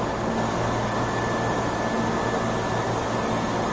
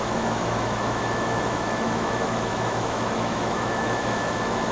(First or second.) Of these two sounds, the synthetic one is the second